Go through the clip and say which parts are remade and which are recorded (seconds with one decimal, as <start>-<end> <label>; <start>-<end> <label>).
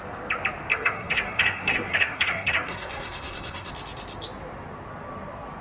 0.0-0.7 recorded; 0.7-3.7 remade; 3.7-5.6 recorded